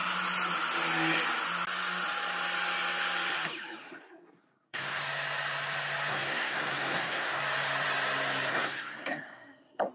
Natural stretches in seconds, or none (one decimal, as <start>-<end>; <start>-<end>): 0.0-3.8; 5.0-6.1; 7.4-8.5